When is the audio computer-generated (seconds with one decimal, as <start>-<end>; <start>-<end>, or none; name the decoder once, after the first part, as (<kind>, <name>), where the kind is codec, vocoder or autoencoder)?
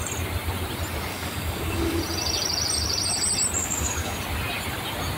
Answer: 1.1-2.0 (codec, DAC); 3.6-4.2